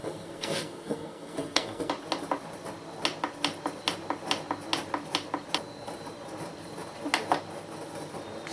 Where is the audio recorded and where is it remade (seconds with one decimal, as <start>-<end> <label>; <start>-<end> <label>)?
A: 0.0-1.9 remade; 1.9-8.5 recorded